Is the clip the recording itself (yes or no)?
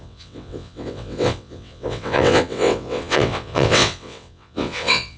no